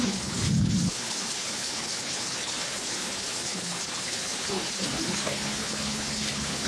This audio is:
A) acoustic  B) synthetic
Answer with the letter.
B